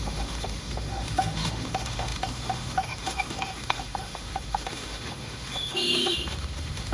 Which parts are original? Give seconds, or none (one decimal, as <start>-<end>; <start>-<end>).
none